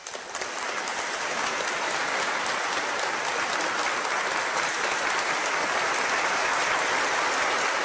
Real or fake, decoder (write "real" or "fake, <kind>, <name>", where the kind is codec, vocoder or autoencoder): real